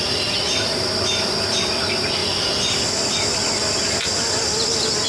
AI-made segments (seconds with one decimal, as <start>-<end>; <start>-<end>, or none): none